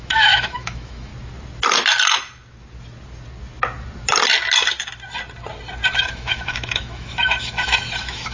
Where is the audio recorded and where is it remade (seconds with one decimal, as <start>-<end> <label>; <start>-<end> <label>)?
0.0-1.1 remade; 1.1-6.0 recorded; 6.0-8.3 remade